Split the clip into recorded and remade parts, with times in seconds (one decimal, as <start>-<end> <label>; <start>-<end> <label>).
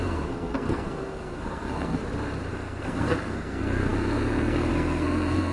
0.0-2.0 remade; 2.0-2.5 recorded; 2.5-5.5 remade